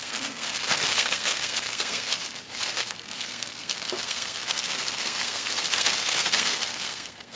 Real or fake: fake